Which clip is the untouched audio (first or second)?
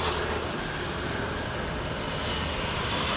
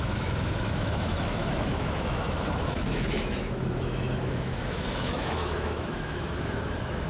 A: first